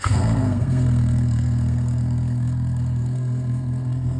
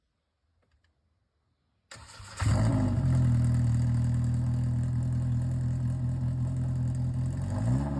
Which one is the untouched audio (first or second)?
second